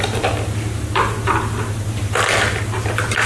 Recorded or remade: recorded